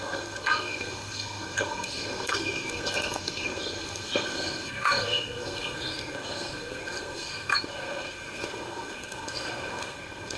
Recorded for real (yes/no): no